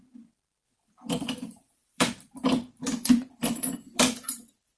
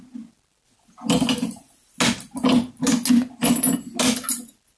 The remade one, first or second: first